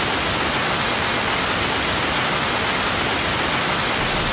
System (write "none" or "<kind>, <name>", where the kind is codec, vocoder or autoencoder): none